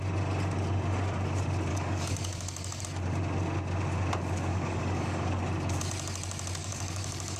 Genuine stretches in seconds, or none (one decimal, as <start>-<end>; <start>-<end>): 0.0-1.7; 2.8-4.5; 5.4-6.6